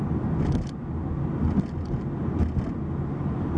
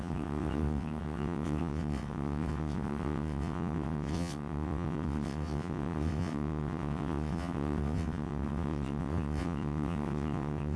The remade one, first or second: second